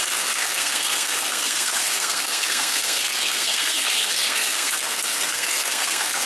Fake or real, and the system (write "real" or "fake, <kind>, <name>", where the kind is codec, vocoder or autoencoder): fake, codec, SNAC